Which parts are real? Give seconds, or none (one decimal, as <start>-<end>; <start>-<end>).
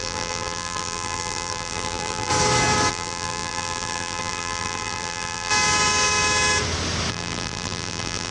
2.3-2.9; 5.5-7.1